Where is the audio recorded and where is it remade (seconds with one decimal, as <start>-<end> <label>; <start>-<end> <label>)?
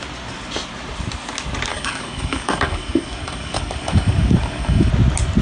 0.0-1.7 recorded; 1.7-4.9 remade; 4.9-5.4 recorded